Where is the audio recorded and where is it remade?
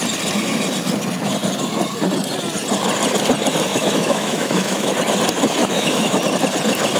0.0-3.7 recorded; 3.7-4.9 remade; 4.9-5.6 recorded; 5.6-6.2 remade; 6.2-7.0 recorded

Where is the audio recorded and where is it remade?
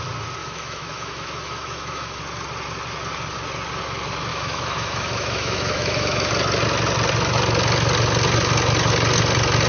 0.0-0.4 recorded; 0.4-2.2 remade; 2.2-4.3 recorded; 4.3-6.3 remade; 6.3-9.7 recorded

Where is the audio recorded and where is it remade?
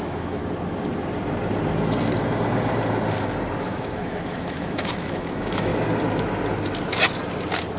0.0-0.4 remade; 0.4-3.6 recorded; 3.6-5.7 remade; 5.7-7.8 recorded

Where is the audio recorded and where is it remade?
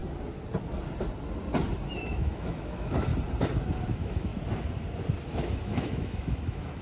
0.0-2.0 recorded; 2.0-3.1 remade; 3.1-3.9 recorded; 3.9-4.3 remade; 4.3-5.3 recorded; 5.3-6.8 remade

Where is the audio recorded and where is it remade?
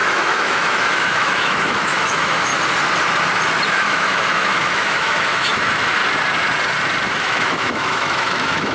0.0-2.5 remade; 2.5-3.7 recorded; 3.7-6.0 remade; 6.0-7.1 recorded; 7.1-8.7 remade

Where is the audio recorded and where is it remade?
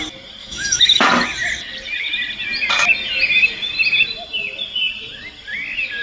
0.0-0.4 recorded; 0.4-1.0 remade; 1.0-6.0 recorded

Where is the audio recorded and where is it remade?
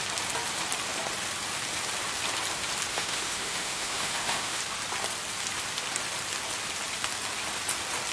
0.0-2.9 recorded; 2.9-4.6 remade; 4.6-8.1 recorded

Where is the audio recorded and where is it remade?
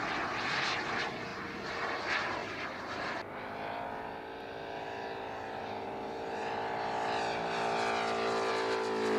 0.0-9.2 recorded